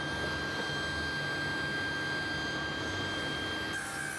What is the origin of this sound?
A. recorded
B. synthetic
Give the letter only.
A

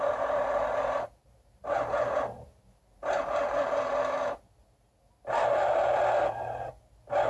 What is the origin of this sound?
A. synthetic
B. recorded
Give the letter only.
B